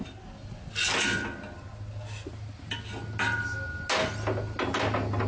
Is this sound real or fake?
real